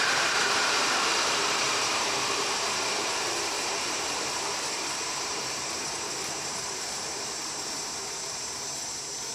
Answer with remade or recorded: remade